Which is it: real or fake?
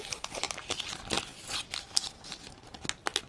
real